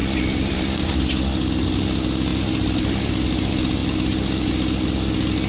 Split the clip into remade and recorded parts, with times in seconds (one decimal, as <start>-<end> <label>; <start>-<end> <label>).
0.0-0.6 remade; 0.6-2.3 recorded; 2.3-3.1 remade; 3.1-5.5 recorded